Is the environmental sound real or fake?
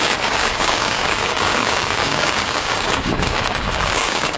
fake